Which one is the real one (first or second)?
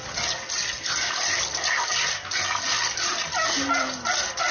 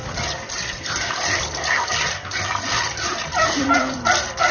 first